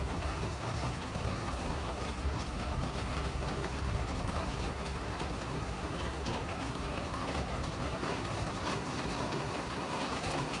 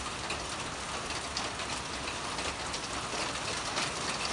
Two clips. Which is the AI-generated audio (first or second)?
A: first